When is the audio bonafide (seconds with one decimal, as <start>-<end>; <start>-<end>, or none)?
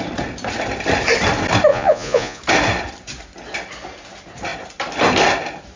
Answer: 0.0-1.7; 2.4-5.8